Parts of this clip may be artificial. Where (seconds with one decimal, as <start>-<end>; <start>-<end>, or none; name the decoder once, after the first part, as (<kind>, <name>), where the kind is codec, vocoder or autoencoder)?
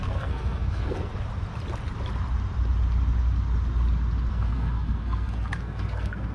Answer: 0.0-1.1 (codec, SNAC); 4.3-6.3